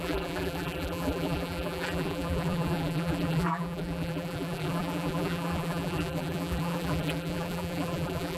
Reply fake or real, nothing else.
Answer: fake